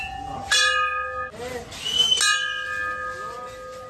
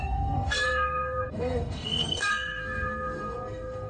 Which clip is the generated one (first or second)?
second